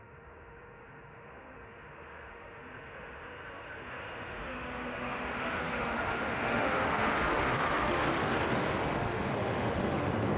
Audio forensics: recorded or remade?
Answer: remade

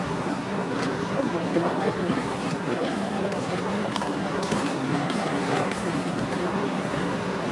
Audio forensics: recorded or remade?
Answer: remade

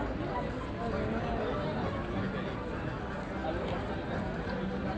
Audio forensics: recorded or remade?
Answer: recorded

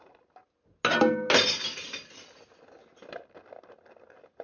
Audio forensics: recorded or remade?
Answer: recorded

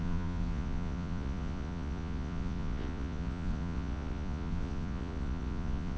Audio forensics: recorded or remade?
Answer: remade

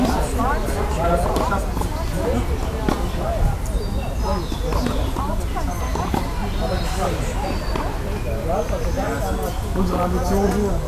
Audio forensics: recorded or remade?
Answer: recorded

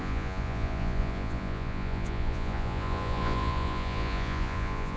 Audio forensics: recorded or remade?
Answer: remade